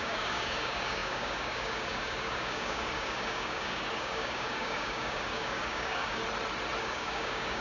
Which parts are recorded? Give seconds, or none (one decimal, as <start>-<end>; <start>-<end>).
6.2-6.8